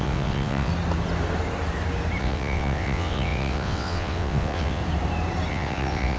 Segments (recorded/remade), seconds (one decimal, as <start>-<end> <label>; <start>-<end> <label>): 0.0-0.7 remade; 0.7-2.2 recorded; 2.2-4.8 remade; 4.8-5.5 recorded; 5.5-6.2 remade